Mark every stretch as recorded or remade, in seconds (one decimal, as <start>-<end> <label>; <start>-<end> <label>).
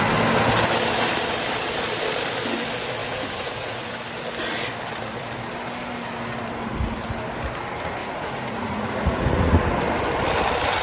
0.0-3.0 recorded; 3.0-3.9 remade; 3.9-8.0 recorded; 8.0-9.6 remade; 9.6-10.8 recorded